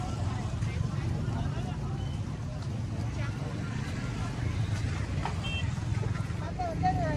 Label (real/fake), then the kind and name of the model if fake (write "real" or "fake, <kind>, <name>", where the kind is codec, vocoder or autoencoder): real